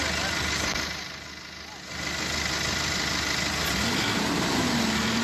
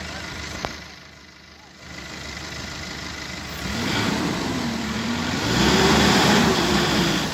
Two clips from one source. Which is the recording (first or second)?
first